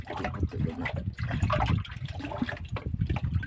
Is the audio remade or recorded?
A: recorded